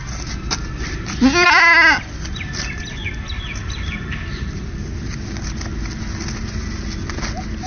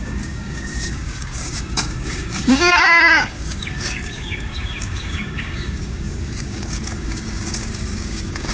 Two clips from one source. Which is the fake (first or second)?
second